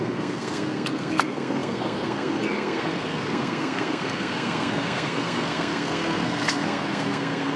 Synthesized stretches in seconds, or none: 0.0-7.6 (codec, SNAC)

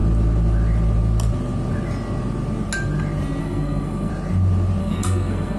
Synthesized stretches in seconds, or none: 3.4-4.1 (codec, SNAC); 4.8-5.6

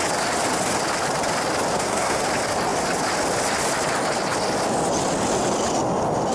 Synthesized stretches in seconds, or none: 1.7-2.2 (codec, SNAC)

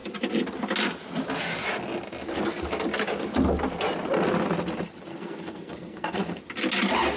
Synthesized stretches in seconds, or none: 5.1-6.4 (codec, SNAC)

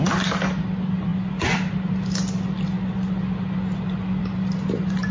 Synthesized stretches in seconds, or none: none